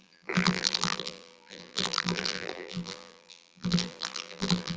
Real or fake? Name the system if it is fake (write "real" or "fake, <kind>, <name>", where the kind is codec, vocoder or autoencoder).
fake, vocoder, BigVGAN v2